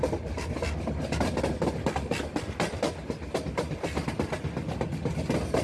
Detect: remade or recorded recorded